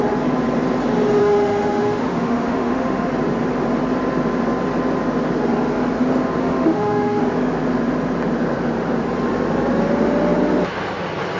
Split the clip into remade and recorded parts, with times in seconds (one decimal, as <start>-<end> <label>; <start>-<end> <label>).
0.0-1.2 recorded; 1.2-3.1 remade; 3.1-6.4 recorded; 6.4-7.2 remade; 7.2-11.4 recorded